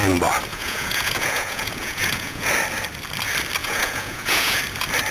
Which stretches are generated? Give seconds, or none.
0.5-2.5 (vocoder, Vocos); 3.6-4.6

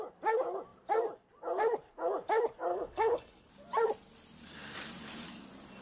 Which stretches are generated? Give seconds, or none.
2.7-3.5 (codec, HILCodec)